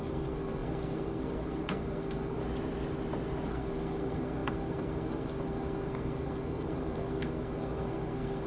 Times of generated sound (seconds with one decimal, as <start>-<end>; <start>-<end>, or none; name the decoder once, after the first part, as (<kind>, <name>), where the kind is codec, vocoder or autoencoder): 0.0-2.4 (codec, SNAC); 3.5-8.5